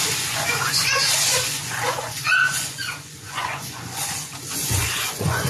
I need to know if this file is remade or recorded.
remade